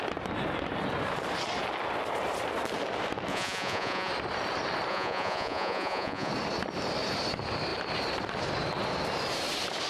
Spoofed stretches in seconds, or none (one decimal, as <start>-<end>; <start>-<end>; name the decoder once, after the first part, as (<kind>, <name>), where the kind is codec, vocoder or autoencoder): 3.3-4.1 (vocoder, Vocos); 4.9-6.3